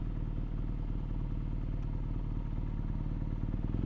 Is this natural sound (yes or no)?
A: yes